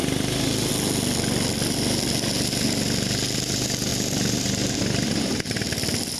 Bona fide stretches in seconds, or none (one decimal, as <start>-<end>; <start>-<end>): 0.7-3.9